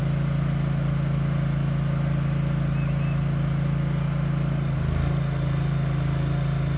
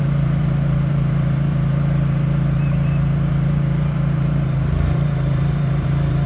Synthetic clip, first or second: second